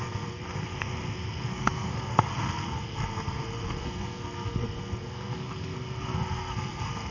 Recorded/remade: remade